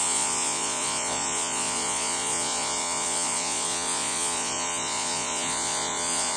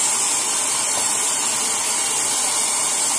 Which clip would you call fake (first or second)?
first